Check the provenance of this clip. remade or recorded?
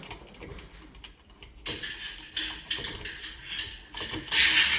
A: recorded